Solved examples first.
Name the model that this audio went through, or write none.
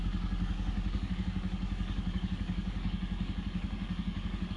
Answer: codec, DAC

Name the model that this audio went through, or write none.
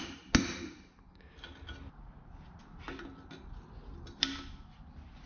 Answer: none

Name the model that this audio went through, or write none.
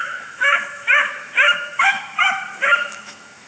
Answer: autoencoder, DAC-VAE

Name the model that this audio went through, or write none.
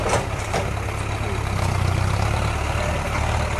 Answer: none